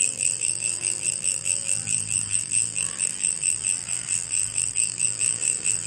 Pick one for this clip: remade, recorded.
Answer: remade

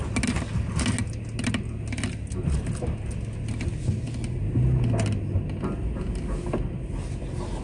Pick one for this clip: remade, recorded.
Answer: recorded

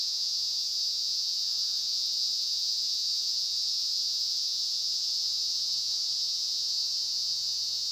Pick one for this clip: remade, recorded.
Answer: remade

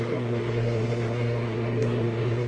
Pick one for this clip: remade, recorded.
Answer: remade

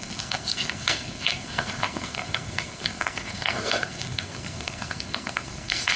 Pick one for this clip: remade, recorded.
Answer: remade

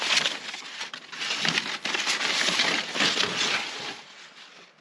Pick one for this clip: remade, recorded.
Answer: recorded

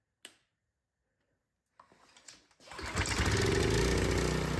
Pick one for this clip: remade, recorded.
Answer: recorded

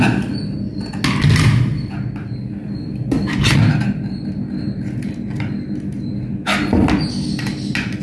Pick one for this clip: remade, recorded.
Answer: recorded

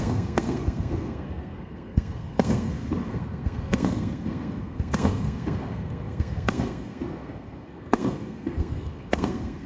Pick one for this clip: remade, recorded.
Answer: remade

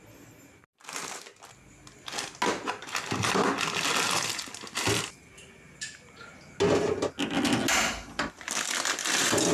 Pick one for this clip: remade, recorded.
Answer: recorded